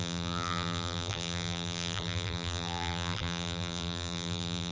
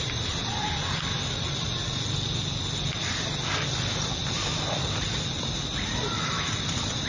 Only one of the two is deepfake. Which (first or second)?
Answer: first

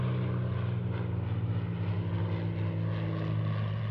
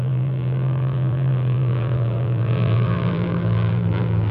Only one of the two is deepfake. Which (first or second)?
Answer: second